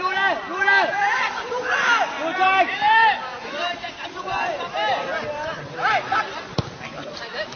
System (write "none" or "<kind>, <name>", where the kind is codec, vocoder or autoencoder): none